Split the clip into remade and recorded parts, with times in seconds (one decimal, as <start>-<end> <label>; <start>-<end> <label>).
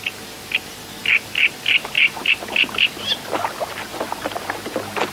0.0-5.1 recorded